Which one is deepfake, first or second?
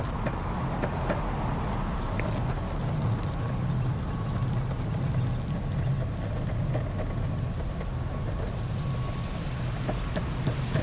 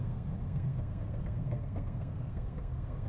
second